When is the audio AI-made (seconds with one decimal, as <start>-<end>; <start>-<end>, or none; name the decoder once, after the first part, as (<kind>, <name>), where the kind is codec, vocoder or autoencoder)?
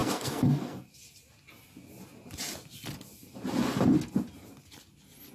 0.0-0.9 (codec, SNAC)